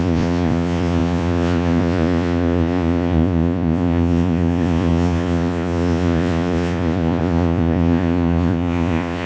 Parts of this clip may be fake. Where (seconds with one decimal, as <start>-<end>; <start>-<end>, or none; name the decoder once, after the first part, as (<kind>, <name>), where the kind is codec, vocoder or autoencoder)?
0.0-9.3 (vocoder, Vocos)